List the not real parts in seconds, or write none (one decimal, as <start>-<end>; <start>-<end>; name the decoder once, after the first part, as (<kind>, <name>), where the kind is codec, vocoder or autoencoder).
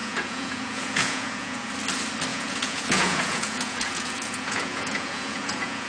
0.0-1.7 (vocoder, Vocos); 2.3-5.9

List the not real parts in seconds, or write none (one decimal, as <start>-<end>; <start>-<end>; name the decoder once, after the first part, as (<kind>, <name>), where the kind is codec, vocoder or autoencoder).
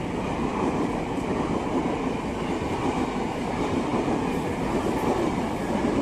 none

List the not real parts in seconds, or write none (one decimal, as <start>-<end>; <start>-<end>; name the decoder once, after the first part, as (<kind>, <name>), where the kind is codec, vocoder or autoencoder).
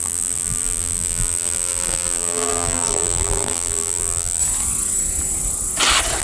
0.0-4.4 (vocoder, BigVGAN v2)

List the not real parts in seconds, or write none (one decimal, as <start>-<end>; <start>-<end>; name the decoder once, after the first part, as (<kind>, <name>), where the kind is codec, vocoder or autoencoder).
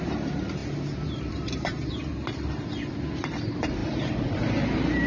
0.0-2.1 (vocoder, BigVGAN v2); 3.2-5.1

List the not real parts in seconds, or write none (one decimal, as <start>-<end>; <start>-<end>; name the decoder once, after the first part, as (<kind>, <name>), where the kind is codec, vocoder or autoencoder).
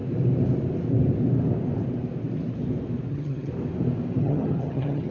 3.1-3.5 (vocoder, HiFi-GAN); 4.2-5.1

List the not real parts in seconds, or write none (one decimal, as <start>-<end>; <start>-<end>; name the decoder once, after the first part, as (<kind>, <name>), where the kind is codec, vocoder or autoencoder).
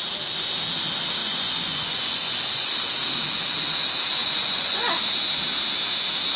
1.2-2.7 (vocoder, Vocos); 4.2-5.0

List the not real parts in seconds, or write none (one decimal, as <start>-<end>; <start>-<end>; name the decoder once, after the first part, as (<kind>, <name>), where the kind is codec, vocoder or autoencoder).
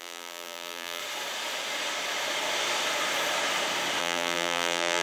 0.0-1.0 (vocoder, BigVGAN v2); 4.0-5.0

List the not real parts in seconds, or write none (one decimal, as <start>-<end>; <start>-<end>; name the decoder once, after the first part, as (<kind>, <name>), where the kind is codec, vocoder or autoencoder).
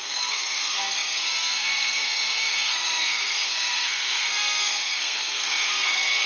0.0-6.3 (codec, SNAC)